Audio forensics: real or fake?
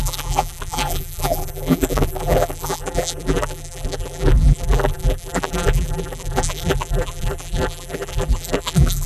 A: fake